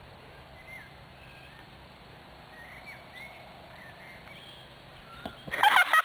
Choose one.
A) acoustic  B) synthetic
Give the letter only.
A